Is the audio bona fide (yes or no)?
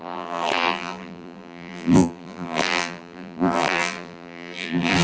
no